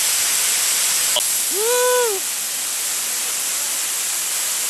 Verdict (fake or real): real